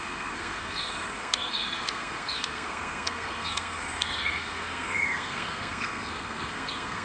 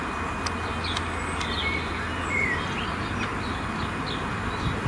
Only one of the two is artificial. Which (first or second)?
first